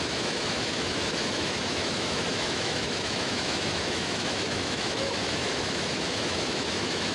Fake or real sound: fake